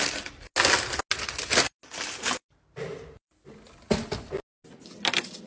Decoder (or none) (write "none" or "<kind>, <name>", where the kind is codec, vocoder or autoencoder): none